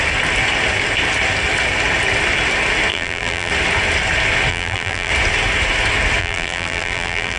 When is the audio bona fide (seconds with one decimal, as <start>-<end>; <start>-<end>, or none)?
0.0-2.9; 3.5-4.5; 5.1-6.2